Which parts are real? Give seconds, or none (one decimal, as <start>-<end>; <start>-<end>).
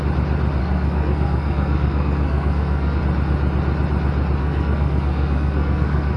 0.0-0.6; 3.0-4.4